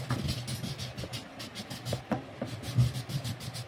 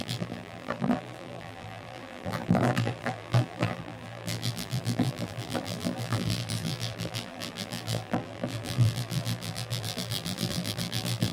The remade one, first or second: second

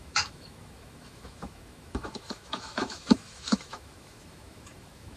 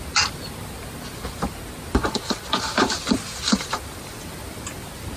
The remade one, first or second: first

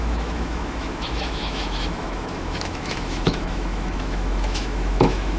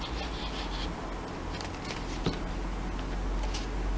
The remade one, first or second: first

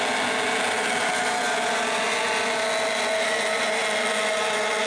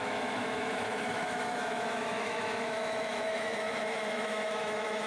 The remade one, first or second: second